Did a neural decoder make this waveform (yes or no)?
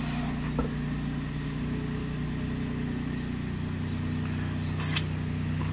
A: no